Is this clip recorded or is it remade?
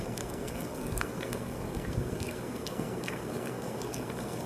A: remade